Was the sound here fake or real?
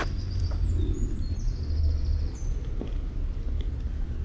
real